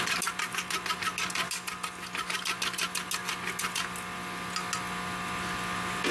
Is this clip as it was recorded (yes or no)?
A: yes